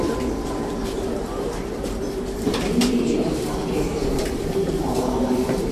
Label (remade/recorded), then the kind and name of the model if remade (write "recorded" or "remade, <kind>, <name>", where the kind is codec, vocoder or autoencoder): remade, vocoder, BigVGAN v2